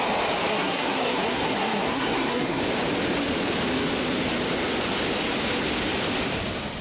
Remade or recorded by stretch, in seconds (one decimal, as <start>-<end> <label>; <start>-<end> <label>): 0.0-0.5 recorded; 0.5-2.6 remade; 2.6-6.8 recorded